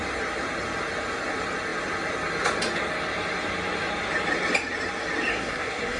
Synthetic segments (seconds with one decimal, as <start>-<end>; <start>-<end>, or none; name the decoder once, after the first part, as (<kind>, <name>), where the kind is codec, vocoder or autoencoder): 5.3-6.0 (codec, SNAC)